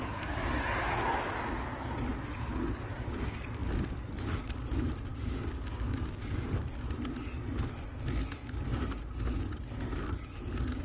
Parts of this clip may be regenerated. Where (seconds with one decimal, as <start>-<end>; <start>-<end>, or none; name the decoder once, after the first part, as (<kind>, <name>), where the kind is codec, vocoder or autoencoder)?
5.1-6.5 (codec, DAC)